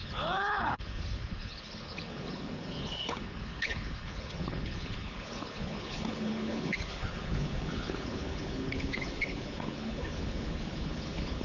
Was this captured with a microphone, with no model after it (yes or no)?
no